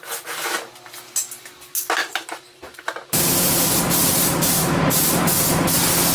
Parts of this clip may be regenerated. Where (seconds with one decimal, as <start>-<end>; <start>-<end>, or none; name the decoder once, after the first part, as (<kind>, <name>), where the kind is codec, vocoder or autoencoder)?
2.0-3.7 (vocoder, BigVGAN v2); 4.4-5.2